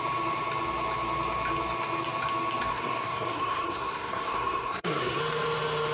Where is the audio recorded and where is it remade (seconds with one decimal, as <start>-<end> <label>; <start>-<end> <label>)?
0.0-2.7 recorded; 2.7-5.2 remade; 5.2-5.9 recorded

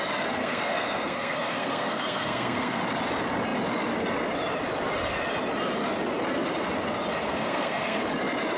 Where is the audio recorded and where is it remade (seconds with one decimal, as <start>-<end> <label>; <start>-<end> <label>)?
0.0-0.4 recorded; 0.4-2.8 remade; 2.8-7.2 recorded; 7.2-8.0 remade; 8.0-8.6 recorded

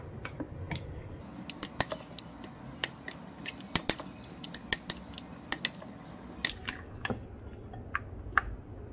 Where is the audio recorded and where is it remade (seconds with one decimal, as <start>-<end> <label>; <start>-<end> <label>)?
0.0-8.9 recorded

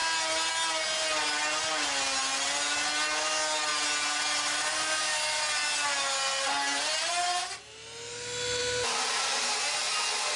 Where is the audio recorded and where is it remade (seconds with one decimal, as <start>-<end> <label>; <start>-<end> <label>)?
0.0-10.4 recorded